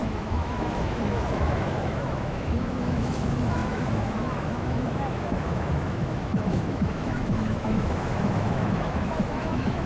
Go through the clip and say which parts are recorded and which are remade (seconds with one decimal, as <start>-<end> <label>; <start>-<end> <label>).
0.0-9.9 remade

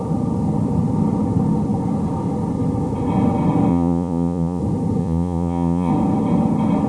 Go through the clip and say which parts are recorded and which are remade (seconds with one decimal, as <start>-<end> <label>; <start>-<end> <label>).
0.0-3.7 recorded; 3.7-4.6 remade; 4.6-5.0 recorded; 5.0-5.9 remade; 5.9-6.9 recorded

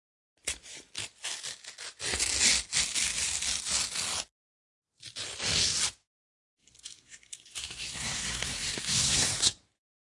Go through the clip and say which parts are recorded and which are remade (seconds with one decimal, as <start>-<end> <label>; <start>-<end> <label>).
0.0-6.0 recorded; 6.0-9.5 remade; 9.5-10.1 recorded

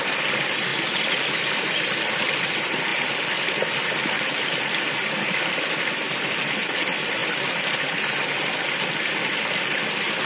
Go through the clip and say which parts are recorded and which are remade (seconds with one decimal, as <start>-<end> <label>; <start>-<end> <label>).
0.0-2.9 recorded; 2.9-4.8 remade; 4.8-7.2 recorded; 7.2-9.3 remade; 9.3-10.3 recorded

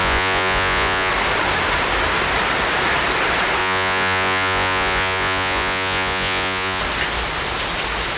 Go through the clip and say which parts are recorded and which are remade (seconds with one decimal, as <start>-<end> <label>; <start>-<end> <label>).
0.0-1.1 remade; 1.1-3.6 recorded; 3.6-6.8 remade; 6.8-8.2 recorded

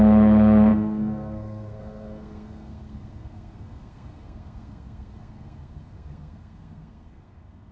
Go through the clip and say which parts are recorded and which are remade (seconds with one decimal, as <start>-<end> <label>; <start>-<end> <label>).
0.0-7.7 remade